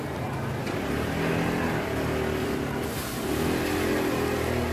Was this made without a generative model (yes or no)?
yes